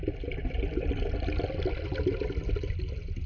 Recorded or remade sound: recorded